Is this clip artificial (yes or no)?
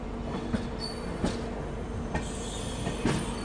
no